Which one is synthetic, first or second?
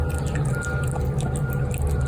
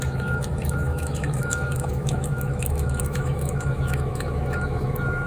second